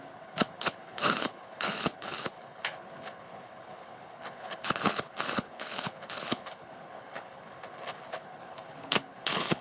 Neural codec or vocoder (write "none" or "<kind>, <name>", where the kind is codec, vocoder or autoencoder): codec, HILCodec